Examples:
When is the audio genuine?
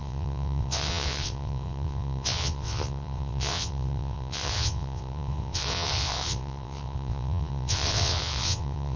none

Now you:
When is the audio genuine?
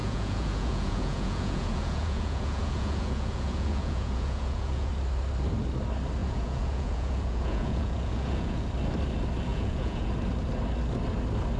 4.9-6.2; 8.7-9.5; 10.1-11.6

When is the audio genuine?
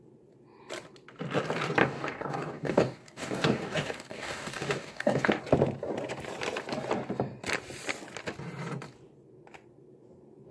0.0-1.8; 5.4-10.5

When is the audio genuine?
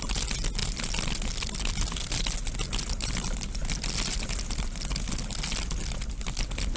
0.0-6.8